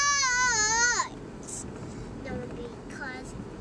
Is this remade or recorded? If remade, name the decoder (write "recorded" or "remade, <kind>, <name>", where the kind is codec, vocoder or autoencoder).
recorded